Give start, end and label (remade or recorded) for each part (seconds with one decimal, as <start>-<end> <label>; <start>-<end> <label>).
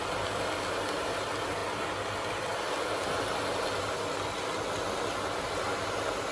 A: 0.0-6.3 recorded